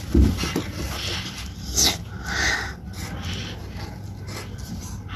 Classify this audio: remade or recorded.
recorded